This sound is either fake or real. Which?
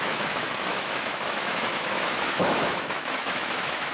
fake